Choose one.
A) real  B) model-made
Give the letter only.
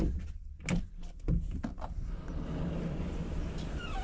A